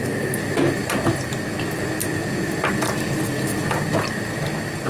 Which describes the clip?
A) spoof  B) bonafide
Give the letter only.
B